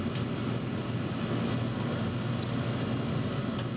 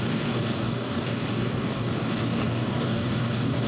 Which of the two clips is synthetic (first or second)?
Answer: second